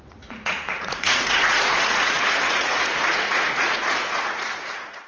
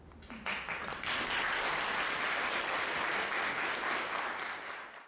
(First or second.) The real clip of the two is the second